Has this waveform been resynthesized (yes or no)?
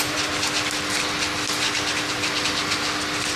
no